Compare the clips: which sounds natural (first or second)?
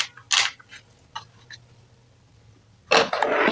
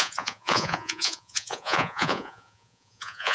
first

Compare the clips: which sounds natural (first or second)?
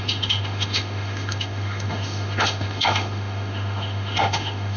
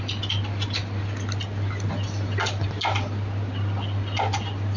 second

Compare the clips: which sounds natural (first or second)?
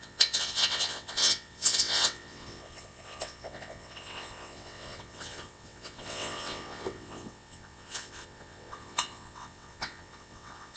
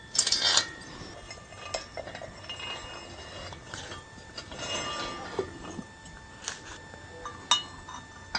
second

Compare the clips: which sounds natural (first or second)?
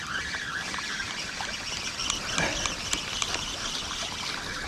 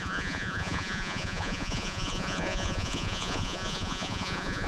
first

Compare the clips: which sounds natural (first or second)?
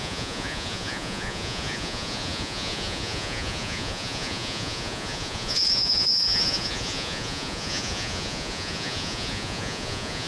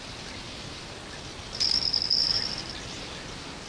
second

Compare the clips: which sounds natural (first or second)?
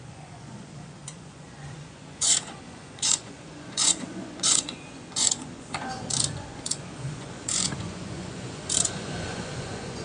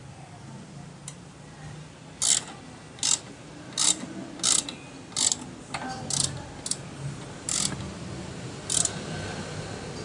second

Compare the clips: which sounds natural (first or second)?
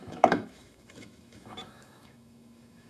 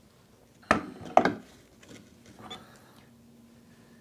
second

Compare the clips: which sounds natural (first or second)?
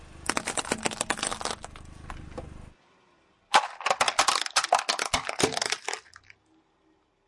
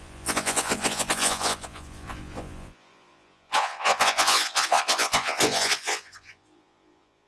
first